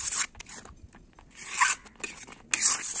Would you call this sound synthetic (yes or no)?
no